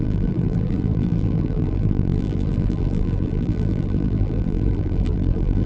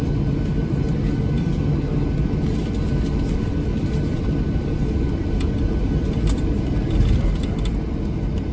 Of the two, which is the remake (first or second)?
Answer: first